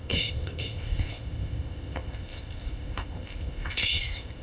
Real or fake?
fake